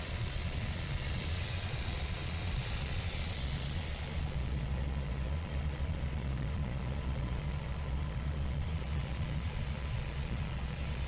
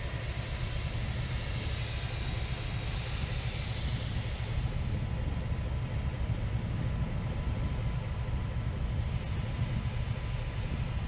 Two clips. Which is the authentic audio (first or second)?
second